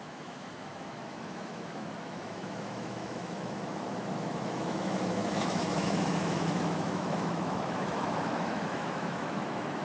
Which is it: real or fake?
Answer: fake